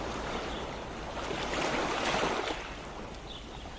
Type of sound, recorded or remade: recorded